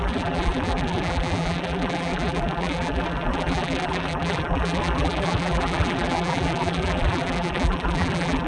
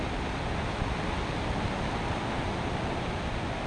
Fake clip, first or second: first